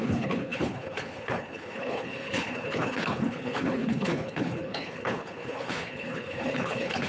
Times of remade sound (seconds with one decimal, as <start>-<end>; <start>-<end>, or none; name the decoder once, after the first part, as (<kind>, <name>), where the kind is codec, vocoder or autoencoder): 0.0-7.1 (codec, HILCodec)

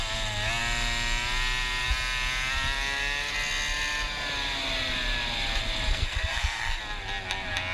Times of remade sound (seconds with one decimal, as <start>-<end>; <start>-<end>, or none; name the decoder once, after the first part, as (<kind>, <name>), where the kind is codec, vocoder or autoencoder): 5.9-6.8 (codec, SNAC)